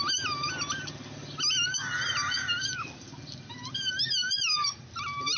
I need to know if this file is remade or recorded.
recorded